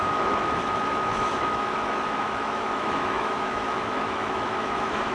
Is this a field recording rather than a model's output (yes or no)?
no